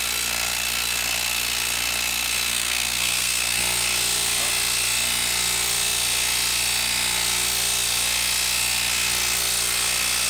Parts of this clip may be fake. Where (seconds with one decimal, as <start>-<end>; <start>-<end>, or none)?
2.5-3.6